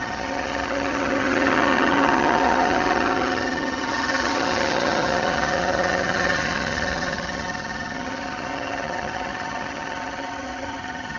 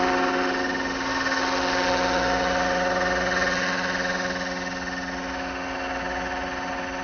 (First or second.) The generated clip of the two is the first